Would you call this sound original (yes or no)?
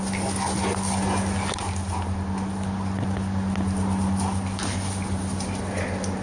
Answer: yes